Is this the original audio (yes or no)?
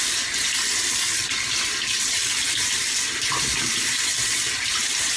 yes